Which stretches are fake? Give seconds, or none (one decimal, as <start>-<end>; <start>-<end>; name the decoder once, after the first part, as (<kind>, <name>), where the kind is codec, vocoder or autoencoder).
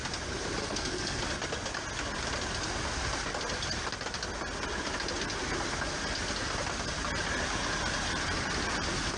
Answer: 0.6-1.2 (codec, SNAC)